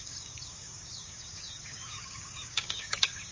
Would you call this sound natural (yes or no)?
no